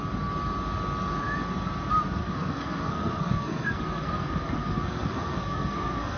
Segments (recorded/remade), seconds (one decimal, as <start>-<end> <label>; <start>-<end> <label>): 0.0-2.2 recorded; 2.2-6.2 remade